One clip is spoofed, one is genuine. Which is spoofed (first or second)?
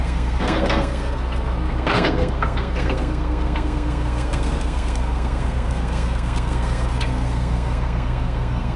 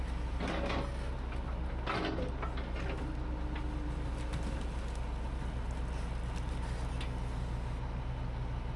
first